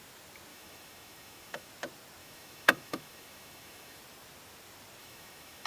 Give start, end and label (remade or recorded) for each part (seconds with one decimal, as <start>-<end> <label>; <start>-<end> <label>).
0.0-0.5 recorded; 0.5-1.7 remade; 1.7-2.2 recorded; 2.2-4.0 remade; 4.0-5.0 recorded; 5.0-5.7 remade